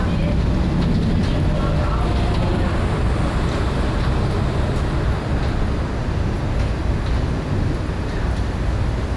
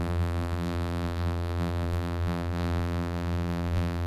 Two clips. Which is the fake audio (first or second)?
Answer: second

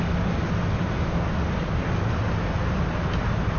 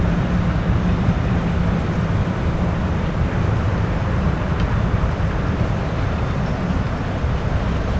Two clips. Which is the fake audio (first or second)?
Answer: second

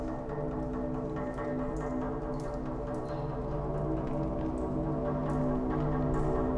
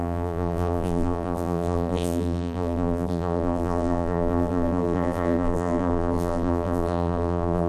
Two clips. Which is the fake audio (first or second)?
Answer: second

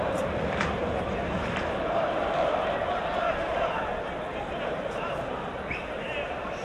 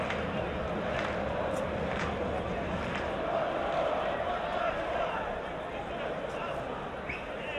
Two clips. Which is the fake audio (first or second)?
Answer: first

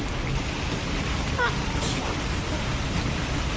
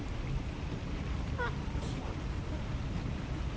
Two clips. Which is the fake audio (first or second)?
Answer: second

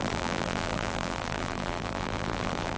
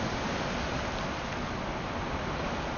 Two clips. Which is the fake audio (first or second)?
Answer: first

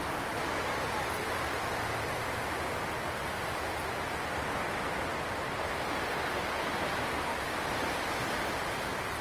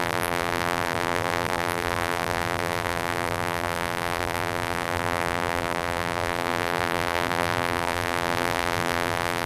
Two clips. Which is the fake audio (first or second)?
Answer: second